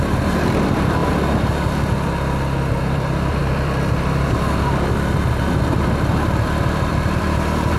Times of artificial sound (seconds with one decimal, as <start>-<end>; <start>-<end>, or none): 0.0-1.0; 2.8-7.8